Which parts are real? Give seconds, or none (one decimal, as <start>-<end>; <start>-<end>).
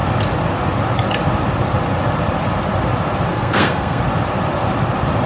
0.0-3.3; 4.0-5.3